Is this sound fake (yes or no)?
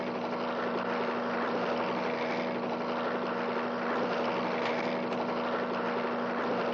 no